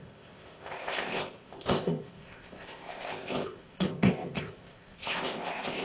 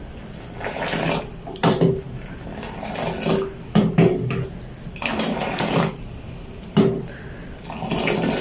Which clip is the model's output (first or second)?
first